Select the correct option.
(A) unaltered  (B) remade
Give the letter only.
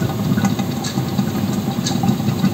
A